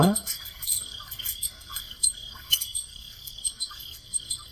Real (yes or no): no